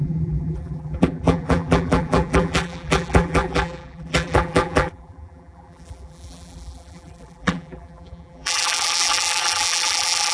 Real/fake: fake